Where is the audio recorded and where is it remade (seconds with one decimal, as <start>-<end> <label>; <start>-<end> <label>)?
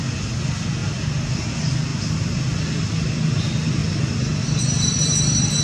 0.0-5.6 recorded